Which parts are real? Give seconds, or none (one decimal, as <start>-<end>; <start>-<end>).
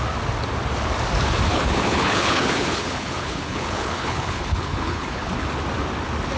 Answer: 0.0-1.5; 5.3-6.4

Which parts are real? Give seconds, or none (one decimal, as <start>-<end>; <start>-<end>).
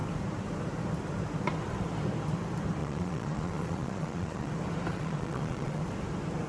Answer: 0.0-2.8; 4.5-4.9; 5.8-6.5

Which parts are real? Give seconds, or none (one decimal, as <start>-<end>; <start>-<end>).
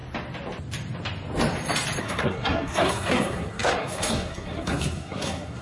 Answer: 0.0-2.0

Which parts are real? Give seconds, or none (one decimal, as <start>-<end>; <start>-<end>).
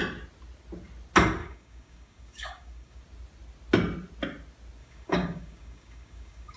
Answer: 0.0-1.4; 3.0-4.8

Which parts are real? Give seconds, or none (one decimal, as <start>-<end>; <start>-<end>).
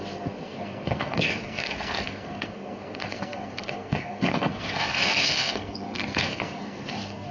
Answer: none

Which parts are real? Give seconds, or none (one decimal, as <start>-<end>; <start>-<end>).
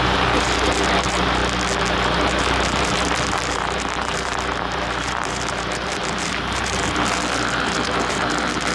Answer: 1.4-1.9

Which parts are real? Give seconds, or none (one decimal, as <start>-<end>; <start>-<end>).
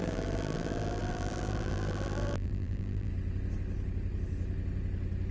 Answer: 3.1-5.3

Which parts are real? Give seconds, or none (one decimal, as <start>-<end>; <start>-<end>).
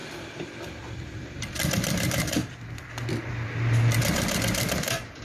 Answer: 3.1-5.2